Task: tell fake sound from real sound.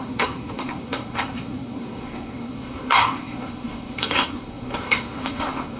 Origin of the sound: fake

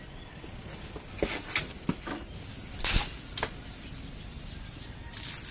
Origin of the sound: real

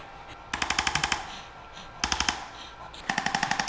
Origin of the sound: real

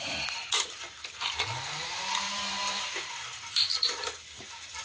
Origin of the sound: fake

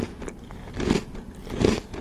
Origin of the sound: real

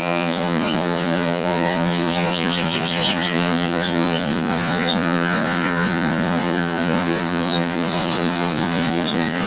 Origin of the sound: fake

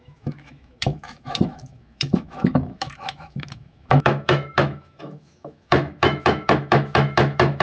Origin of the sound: fake